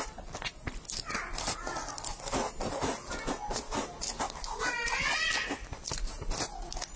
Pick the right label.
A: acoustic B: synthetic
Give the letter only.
A